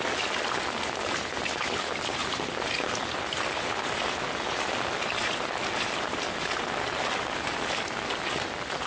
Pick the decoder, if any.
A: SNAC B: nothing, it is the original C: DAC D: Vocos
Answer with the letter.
B